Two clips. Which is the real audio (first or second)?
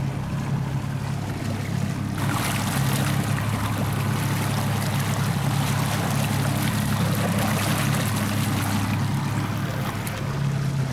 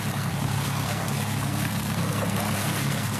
first